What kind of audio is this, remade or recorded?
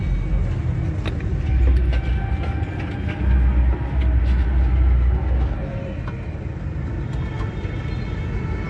recorded